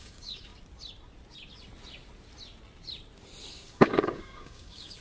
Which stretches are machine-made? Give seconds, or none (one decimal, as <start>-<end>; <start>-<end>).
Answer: 0.0-0.5; 3.5-5.0